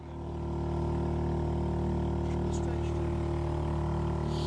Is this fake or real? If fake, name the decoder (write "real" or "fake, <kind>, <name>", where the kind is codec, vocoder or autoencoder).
real